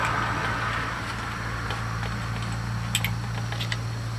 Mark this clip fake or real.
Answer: real